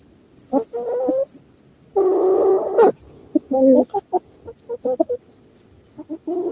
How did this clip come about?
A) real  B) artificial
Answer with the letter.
A